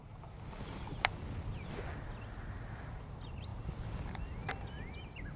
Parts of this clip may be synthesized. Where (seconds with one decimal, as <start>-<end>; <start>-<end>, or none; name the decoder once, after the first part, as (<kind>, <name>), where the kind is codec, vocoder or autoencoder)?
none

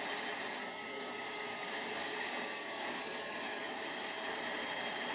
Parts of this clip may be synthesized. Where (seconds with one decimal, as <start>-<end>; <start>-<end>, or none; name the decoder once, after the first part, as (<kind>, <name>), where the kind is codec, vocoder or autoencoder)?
0.6-3.7 (codec, DAC)

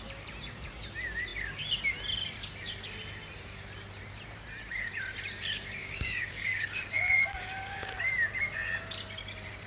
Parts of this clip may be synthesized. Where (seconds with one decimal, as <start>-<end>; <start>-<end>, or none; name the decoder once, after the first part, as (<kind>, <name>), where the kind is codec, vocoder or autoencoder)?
5.8-8.0 (codec, DAC)

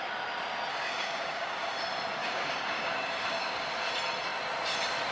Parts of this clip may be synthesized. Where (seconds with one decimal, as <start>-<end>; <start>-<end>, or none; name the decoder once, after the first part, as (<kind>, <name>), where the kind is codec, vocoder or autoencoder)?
0.7-1.7 (codec, DAC); 2.2-3.7

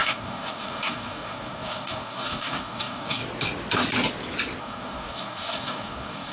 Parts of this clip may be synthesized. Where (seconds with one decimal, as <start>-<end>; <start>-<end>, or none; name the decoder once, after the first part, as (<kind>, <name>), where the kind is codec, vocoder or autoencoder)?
0.0-3.2 (codec, DAC); 4.6-6.3